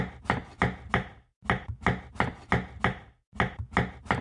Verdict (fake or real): real